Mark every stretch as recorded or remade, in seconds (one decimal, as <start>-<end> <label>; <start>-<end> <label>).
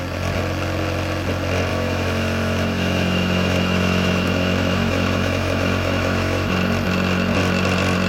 0.0-1.7 recorded; 1.7-6.5 remade; 6.5-8.1 recorded